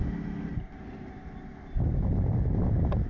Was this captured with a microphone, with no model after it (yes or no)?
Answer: yes